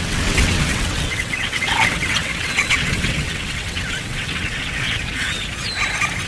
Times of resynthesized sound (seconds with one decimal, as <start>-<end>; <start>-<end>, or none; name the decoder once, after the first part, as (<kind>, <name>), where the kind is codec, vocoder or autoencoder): 0.0-5.4 (vocoder, WaveNeXt)